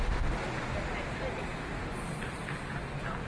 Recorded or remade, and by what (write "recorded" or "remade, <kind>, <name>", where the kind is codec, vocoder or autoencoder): recorded